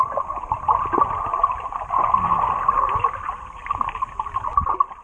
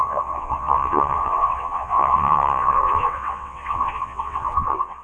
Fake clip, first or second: second